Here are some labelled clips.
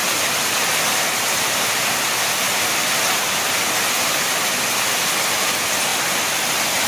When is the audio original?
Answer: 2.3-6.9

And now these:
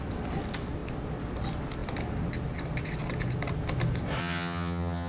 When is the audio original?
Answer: 0.0-4.2

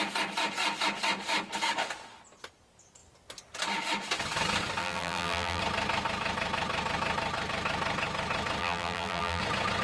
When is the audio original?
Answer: 0.0-4.8; 5.6-8.6; 9.4-9.8

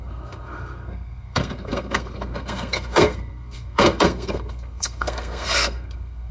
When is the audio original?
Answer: none

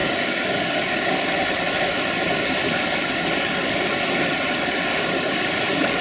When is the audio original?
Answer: 0.8-4.9; 5.5-6.0

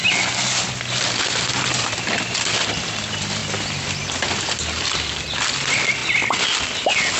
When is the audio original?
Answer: 0.0-7.2

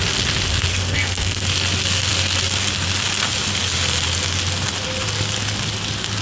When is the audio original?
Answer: 0.0-0.7; 1.4-6.2

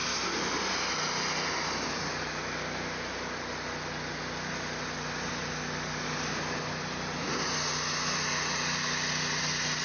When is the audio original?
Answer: 0.8-9.8